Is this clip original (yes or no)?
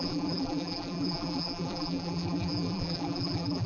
no